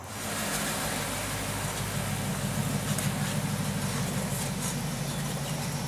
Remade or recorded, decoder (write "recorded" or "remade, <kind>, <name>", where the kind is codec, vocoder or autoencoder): recorded